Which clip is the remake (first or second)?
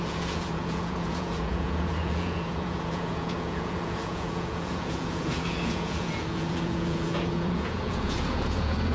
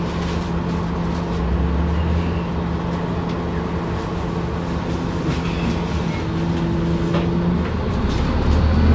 first